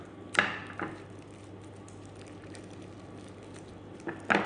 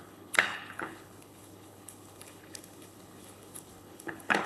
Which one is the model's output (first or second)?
second